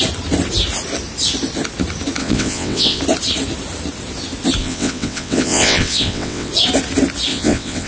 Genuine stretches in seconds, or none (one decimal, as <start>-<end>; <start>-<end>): 0.0-2.2; 3.0-4.6; 6.5-7.3